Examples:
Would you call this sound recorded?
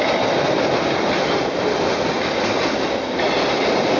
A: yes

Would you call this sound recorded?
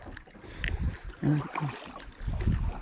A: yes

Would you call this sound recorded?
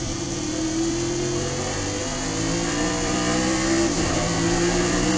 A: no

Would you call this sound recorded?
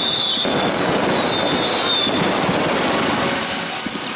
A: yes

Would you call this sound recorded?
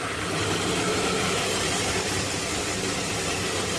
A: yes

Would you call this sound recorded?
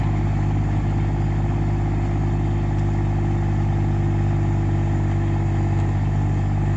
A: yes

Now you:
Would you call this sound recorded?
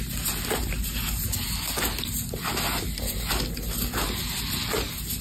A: yes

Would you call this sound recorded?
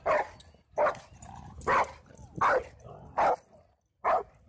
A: yes